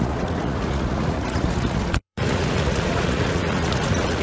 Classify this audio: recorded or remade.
remade